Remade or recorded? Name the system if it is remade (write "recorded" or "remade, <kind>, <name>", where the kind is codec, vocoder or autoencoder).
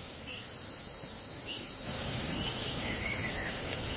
remade, codec, DAC